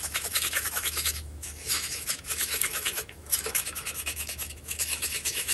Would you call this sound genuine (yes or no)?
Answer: no